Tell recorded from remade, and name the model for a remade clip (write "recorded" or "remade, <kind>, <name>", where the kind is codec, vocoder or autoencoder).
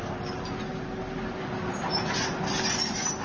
recorded